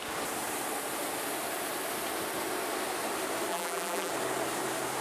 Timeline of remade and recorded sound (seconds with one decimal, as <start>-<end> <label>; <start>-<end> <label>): 0.0-3.5 recorded; 3.5-4.1 remade; 4.1-5.0 recorded